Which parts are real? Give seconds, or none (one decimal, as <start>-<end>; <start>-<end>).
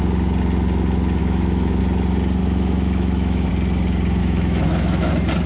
0.0-1.2; 1.8-2.4; 3.5-4.2; 5.1-5.5